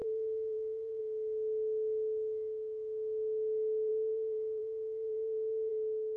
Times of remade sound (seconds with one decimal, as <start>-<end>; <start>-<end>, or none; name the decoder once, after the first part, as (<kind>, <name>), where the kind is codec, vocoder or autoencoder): 0.0-1.0 (vocoder, BigVGAN v2); 3.9-5.7